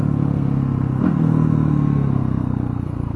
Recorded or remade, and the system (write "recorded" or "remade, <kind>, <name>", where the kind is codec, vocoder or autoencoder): remade, codec, SNAC